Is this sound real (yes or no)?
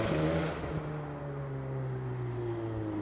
yes